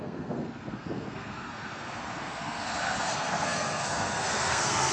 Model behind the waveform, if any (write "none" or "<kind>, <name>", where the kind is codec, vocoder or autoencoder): codec, SNAC